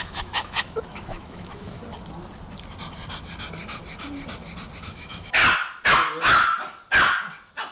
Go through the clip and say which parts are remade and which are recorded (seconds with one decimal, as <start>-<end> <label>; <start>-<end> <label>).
0.0-1.8 remade; 1.8-4.8 recorded; 4.8-5.4 remade; 5.4-7.7 recorded